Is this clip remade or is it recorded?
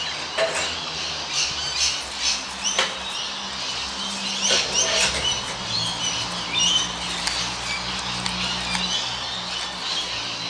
recorded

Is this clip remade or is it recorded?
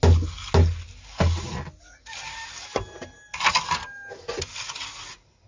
recorded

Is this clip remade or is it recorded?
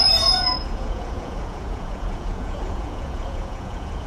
remade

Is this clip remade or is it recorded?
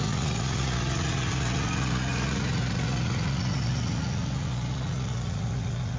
remade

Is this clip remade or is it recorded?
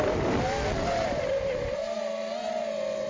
recorded